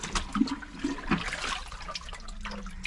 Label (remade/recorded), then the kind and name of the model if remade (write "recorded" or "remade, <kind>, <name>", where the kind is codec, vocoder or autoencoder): recorded